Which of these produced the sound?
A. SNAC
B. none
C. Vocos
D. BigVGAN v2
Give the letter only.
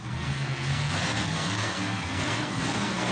A